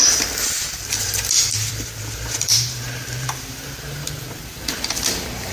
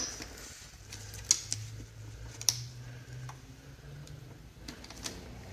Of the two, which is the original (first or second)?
second